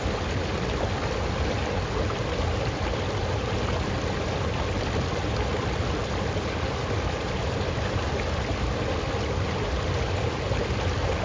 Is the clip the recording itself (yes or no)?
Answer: yes